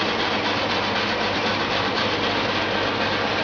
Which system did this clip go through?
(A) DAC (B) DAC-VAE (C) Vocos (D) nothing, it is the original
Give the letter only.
D